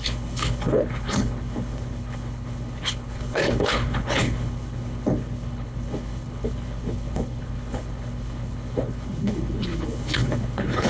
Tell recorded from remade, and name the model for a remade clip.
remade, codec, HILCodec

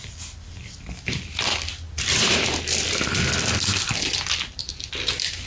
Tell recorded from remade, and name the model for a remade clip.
remade, vocoder, BigVGAN v2